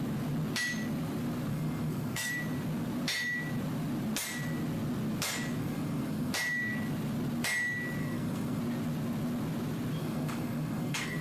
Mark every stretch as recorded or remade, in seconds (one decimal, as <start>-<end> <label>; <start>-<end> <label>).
0.0-1.5 recorded; 1.5-2.3 remade; 2.3-5.6 recorded; 5.6-6.3 remade; 6.3-8.0 recorded; 8.0-8.6 remade; 8.6-10.0 recorded; 10.0-11.2 remade